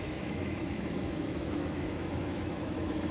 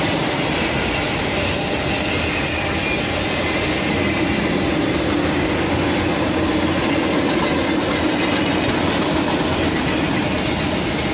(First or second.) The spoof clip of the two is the first